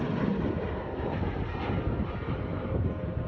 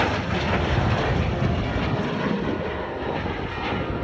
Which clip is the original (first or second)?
second